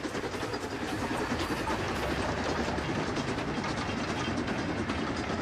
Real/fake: real